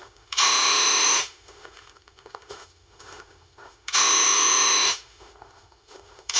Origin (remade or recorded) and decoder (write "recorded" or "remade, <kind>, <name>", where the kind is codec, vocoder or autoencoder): remade, autoencoder, DAC-VAE